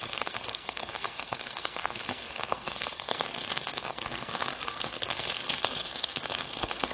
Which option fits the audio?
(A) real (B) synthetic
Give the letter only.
B